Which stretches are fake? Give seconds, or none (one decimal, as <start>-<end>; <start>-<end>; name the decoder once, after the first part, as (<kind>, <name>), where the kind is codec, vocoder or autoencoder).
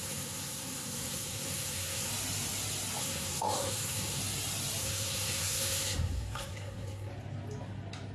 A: 0.0-2.1 (codec, SNAC); 3.0-4.2; 4.8-7.1